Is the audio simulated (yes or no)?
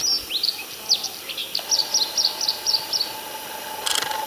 no